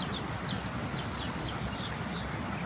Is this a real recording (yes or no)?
yes